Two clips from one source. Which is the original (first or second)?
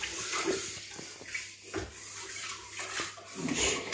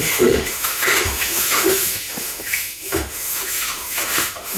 first